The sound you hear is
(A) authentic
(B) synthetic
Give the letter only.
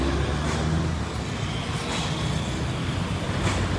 A